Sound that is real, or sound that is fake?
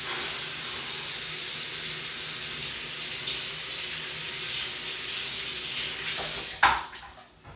real